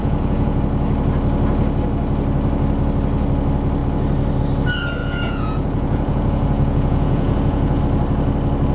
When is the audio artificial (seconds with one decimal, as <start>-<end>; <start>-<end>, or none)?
0.0-0.6; 5.0-7.8

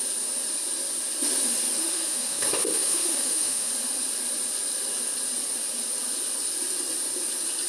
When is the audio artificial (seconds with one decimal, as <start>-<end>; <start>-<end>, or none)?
1.8-3.7